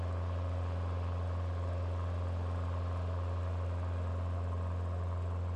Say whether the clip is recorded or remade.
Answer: recorded